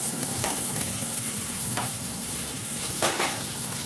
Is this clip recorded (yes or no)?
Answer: no